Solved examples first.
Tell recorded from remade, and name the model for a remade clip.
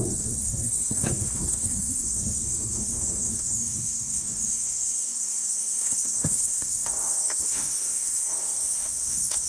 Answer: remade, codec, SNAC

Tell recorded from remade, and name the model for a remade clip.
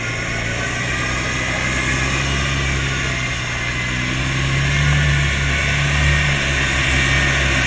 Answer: recorded